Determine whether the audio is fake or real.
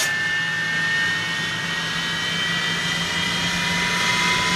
real